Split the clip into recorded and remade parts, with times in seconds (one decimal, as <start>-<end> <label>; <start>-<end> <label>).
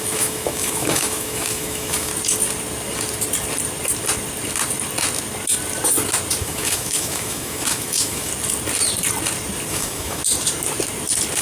0.0-2.1 remade; 2.1-6.4 recorded; 6.4-8.3 remade; 8.3-9.7 recorded; 9.7-10.2 remade; 10.2-11.4 recorded